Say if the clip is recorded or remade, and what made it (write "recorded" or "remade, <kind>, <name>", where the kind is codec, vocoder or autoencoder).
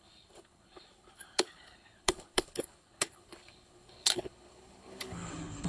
remade, codec, HILCodec